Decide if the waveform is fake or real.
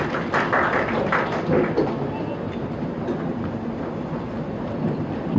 real